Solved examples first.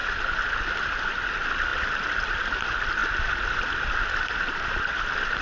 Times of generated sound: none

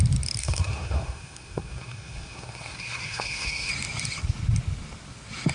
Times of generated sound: 0.4-3.7 (codec, SNAC)